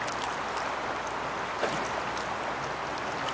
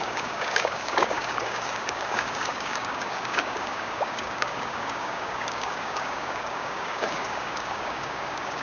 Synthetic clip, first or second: second